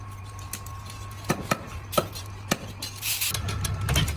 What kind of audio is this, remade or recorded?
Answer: recorded